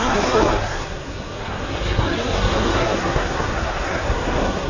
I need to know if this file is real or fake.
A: fake